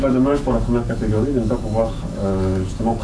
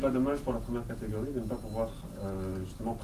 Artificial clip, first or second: first